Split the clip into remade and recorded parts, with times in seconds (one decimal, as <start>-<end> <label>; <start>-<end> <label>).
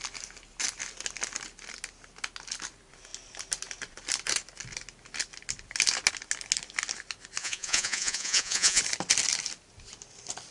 0.0-7.4 recorded; 7.4-8.8 remade; 8.8-10.5 recorded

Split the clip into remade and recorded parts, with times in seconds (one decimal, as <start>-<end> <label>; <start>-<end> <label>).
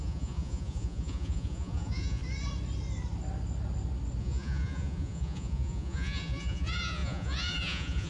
0.0-2.2 remade; 2.2-4.2 recorded; 4.2-8.1 remade